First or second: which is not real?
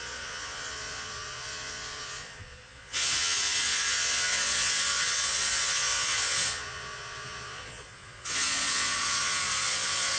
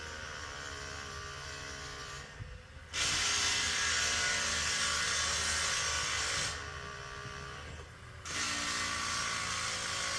first